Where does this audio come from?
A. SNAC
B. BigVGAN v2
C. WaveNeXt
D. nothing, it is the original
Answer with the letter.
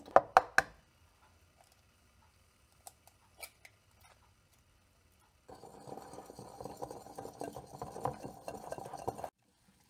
D